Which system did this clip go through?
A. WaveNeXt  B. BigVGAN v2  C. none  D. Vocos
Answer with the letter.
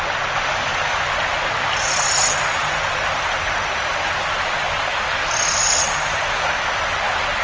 C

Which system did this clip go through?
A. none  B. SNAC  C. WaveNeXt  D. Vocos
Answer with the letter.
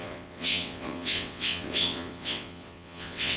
C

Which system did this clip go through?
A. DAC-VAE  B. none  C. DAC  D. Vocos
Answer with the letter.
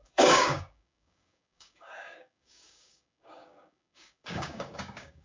C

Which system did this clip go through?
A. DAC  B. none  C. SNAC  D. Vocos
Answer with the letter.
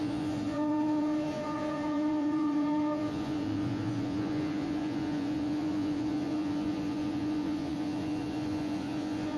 D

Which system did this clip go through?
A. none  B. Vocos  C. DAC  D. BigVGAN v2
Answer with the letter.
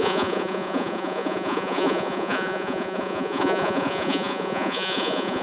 B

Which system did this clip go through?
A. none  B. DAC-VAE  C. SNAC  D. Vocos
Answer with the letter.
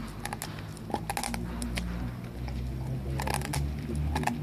A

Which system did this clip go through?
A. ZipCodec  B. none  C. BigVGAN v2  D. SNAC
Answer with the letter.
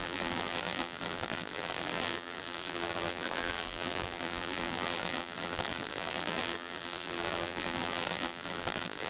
C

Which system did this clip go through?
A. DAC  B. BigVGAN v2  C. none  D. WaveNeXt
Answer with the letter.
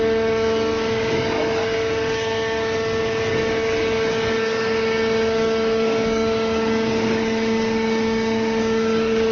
A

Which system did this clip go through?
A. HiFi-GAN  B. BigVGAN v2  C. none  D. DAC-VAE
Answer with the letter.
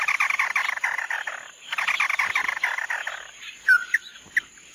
C